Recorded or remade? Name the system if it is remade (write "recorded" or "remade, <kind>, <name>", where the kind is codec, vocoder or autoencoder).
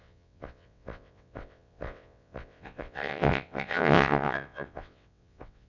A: remade, vocoder, WaveNeXt